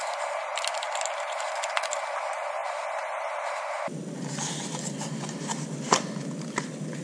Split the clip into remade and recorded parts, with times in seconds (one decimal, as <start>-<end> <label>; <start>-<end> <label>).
0.0-7.0 recorded